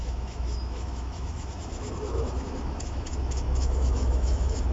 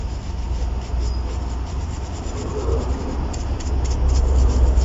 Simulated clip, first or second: first